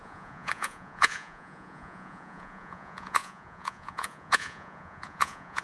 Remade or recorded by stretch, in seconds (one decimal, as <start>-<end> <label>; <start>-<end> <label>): 0.0-5.6 remade